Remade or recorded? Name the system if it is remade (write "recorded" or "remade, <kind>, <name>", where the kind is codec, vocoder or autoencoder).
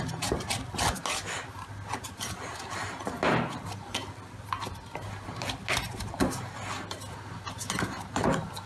recorded